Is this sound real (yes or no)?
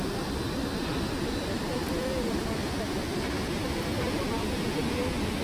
yes